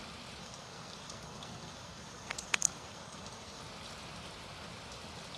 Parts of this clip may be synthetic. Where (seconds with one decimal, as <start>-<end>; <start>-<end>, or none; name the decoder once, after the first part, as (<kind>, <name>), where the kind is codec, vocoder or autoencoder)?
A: 0.4-3.6 (codec, SNAC)